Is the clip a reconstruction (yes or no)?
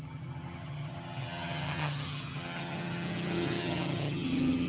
yes